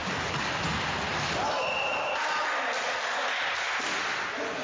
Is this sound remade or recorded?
recorded